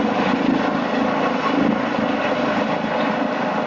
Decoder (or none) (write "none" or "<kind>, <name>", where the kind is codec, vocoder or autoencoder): none